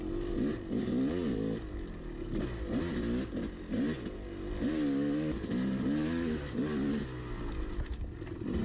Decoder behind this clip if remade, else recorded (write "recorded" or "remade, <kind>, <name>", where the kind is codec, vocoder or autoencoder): recorded